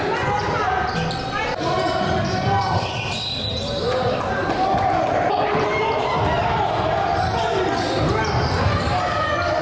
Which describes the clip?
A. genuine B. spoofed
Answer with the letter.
A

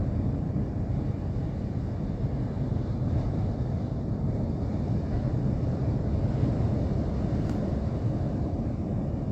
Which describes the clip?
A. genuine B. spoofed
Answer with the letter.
A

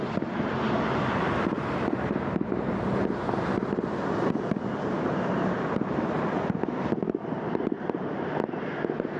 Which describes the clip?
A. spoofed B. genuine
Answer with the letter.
B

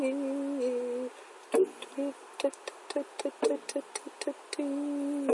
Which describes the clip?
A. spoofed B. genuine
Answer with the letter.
B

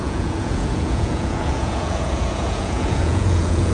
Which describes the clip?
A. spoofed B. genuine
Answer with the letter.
A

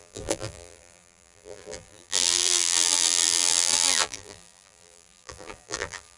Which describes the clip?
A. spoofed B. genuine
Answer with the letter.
A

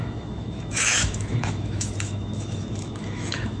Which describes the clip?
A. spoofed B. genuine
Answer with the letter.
A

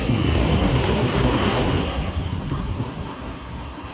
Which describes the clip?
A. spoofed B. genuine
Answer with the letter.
A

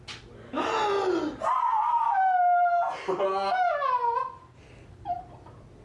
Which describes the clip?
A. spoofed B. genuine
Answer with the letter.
B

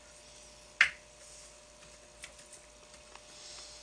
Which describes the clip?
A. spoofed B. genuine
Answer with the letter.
B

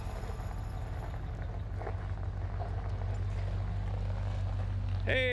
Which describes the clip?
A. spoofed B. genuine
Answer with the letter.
B